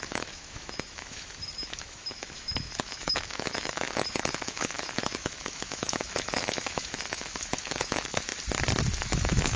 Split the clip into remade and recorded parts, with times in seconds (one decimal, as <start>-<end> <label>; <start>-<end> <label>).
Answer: 0.0-8.3 remade; 8.3-9.0 recorded; 9.0-9.6 remade